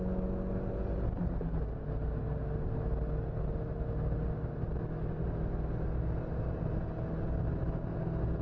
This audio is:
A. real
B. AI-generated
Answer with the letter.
A